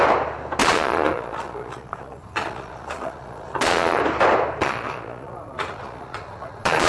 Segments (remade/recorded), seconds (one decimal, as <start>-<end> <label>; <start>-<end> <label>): 0.0-0.6 recorded; 0.6-4.0 remade; 4.0-4.6 recorded; 4.6-6.9 remade